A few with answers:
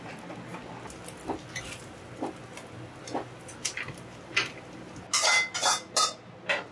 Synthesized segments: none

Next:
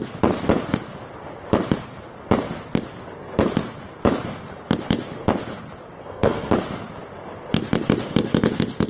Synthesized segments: 6.0-6.5